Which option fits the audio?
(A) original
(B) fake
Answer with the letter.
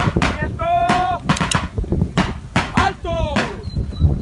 B